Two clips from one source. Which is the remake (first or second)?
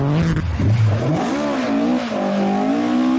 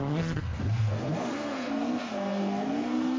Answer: second